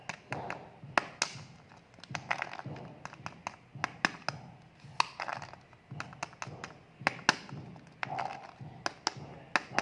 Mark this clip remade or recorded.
recorded